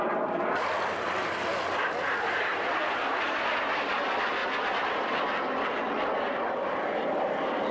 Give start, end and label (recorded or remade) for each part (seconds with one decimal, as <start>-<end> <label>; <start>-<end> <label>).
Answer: 0.0-7.7 recorded